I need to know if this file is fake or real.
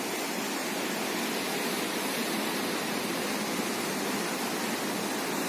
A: real